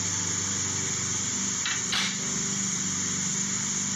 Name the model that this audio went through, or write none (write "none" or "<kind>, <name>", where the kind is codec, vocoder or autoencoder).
none